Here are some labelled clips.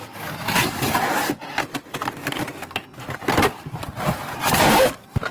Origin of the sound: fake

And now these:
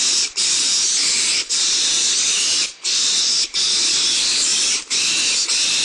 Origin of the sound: fake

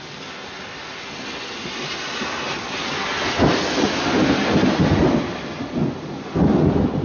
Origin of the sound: real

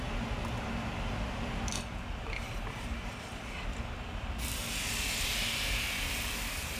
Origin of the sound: real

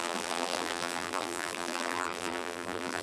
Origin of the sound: fake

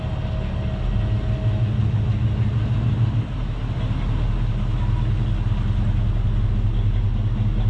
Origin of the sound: real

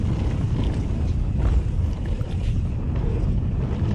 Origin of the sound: real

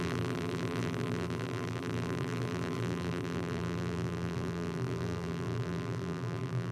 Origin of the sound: fake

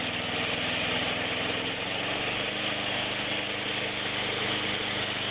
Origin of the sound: real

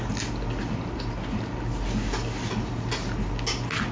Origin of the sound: real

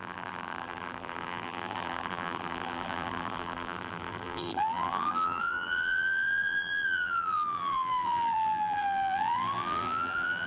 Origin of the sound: fake